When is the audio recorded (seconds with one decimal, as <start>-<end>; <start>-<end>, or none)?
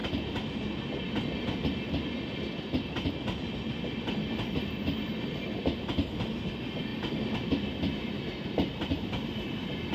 0.0-9.9